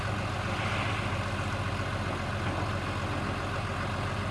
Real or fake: real